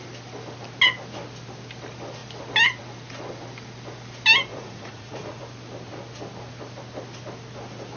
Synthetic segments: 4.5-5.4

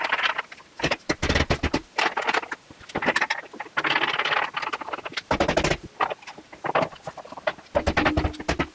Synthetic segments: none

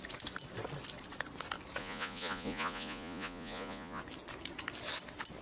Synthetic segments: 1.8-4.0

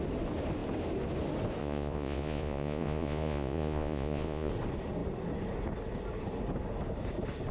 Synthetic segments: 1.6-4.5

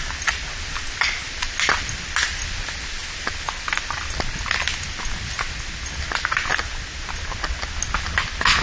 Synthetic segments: none

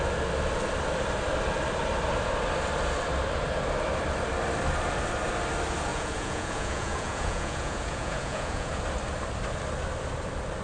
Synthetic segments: 5.9-8.8